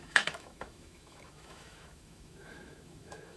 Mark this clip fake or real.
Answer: fake